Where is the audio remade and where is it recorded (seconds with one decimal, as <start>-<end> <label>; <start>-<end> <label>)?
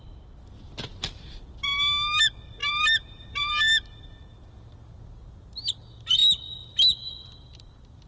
0.0-2.6 recorded; 2.6-3.6 remade; 3.6-8.1 recorded